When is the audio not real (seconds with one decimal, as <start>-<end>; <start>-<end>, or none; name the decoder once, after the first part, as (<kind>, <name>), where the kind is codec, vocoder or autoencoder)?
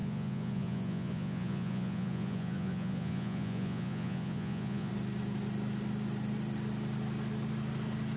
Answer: 0.0-4.9 (vocoder, Vocos)